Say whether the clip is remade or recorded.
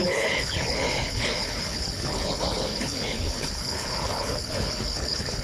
remade